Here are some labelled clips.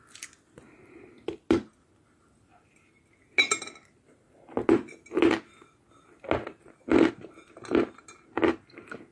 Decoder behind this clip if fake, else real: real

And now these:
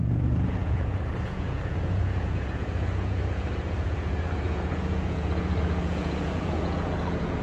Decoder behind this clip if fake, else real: fake, vocoder, Vocos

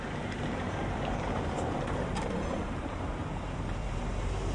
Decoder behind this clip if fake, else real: real